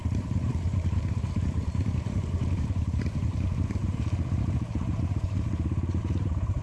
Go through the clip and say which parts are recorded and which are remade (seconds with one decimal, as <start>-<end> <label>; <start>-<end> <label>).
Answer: 0.0-6.6 remade